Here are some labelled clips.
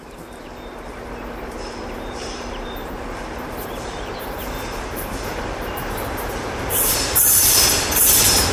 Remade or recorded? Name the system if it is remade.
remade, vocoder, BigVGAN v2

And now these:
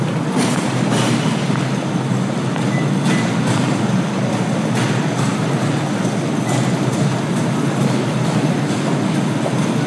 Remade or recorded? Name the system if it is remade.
recorded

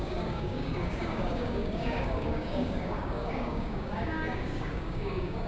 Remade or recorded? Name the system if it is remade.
remade, codec, DAC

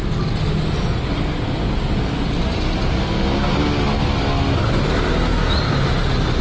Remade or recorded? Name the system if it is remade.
recorded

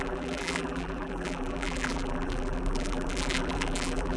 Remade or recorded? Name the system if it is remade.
remade, vocoder, BigVGAN v2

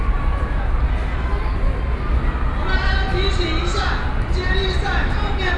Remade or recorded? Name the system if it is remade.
recorded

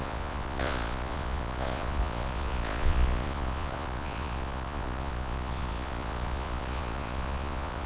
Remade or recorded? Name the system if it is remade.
remade, vocoder, Vocos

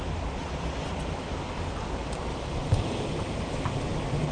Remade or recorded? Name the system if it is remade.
recorded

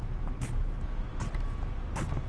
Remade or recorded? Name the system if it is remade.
recorded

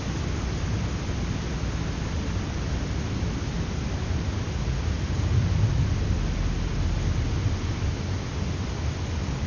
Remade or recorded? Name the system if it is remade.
recorded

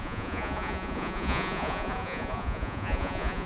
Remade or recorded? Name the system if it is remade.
remade, vocoder, Vocos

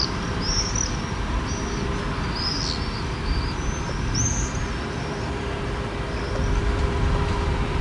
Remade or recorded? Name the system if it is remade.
recorded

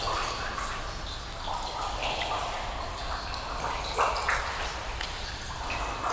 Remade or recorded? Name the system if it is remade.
recorded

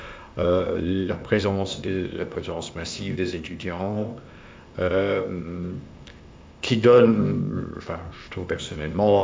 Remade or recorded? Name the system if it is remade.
remade, codec, ZipCodec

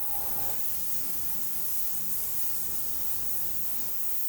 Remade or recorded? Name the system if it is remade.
remade, codec, DAC